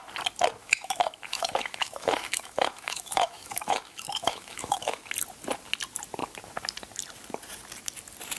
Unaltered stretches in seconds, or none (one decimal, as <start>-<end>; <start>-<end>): 0.0-0.6; 5.0-8.4